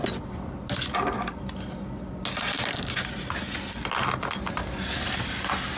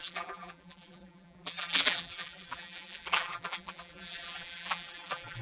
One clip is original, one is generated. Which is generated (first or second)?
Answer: second